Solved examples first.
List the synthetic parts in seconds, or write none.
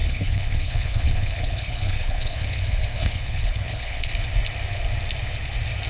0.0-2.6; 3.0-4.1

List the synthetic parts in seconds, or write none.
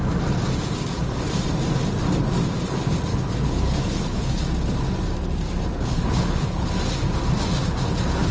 3.1-4.4; 5.7-6.7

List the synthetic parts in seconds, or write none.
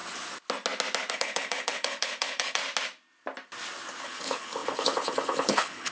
1.1-2.6; 4.0-5.9